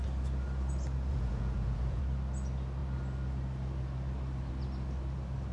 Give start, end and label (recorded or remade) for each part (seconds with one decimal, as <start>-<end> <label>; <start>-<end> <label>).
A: 0.0-1.1 recorded; 1.1-2.0 remade; 2.0-5.5 recorded